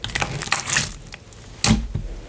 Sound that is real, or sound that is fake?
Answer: real